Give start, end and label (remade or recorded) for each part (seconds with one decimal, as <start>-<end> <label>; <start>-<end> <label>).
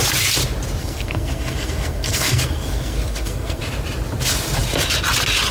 0.0-0.8 recorded; 0.8-3.6 remade; 3.6-5.5 recorded